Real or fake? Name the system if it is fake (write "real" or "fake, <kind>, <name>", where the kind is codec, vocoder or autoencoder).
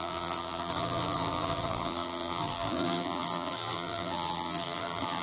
fake, vocoder, BigVGAN v2